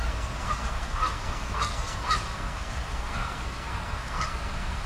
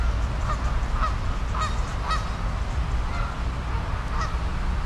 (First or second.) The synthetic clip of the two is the first